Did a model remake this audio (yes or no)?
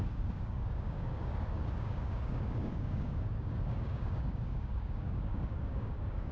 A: yes